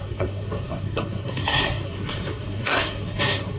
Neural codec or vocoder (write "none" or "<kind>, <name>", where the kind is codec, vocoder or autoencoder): codec, SNAC